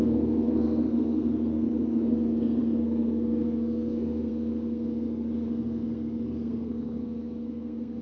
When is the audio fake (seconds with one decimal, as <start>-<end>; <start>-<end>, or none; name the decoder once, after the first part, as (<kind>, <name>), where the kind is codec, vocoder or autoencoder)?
0.0-8.0 (codec, SNAC)

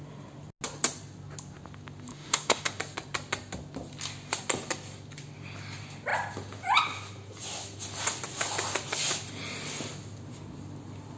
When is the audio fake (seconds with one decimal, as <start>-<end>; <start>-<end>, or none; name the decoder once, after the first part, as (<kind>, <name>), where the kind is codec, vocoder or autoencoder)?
2.1-2.8 (autoencoder, DAC-VAE)